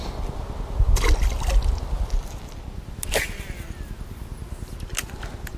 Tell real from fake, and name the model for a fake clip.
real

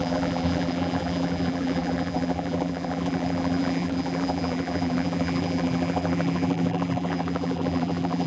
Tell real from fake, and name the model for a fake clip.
fake, vocoder, BigVGAN v2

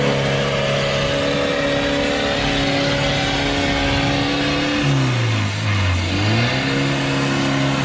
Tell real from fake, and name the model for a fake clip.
real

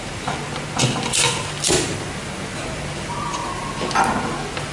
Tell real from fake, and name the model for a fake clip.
real